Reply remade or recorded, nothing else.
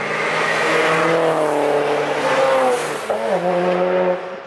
recorded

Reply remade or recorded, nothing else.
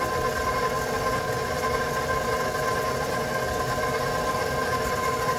recorded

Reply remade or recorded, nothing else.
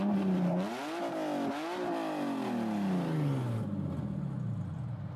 recorded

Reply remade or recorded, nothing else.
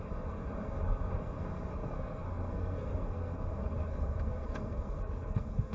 remade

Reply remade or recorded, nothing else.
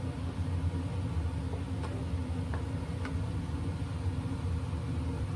recorded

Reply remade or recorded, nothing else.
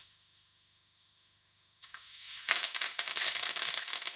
remade